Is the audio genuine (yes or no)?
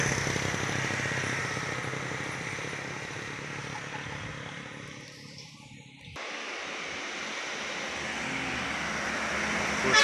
yes